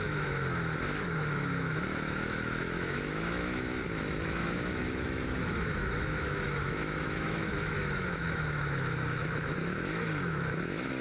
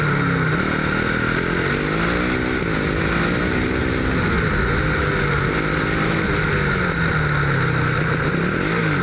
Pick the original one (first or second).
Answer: second